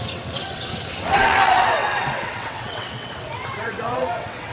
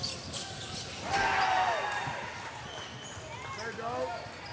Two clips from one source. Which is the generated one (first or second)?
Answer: first